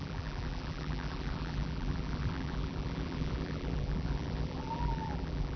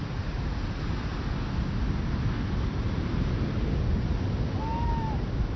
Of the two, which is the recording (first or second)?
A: second